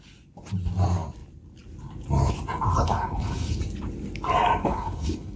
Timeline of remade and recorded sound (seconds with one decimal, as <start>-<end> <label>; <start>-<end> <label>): 0.0-2.7 recorded; 2.7-3.6 remade; 3.6-4.6 recorded; 4.6-5.4 remade